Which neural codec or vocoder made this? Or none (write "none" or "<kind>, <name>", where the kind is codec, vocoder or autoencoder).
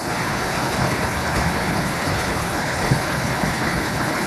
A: codec, HILCodec